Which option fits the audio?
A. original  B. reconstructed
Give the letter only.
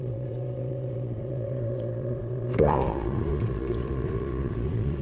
B